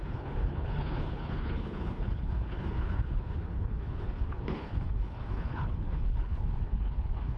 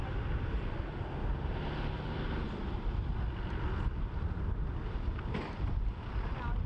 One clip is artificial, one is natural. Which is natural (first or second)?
second